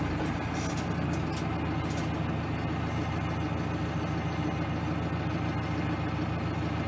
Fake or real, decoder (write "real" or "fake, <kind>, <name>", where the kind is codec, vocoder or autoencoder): real